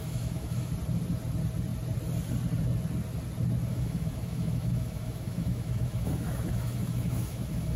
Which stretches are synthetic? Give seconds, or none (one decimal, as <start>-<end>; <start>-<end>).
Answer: 0.0-0.7; 3.7-7.8